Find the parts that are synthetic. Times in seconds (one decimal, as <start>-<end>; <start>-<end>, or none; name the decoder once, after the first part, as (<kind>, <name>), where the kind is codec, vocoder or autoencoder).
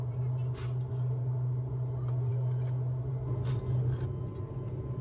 none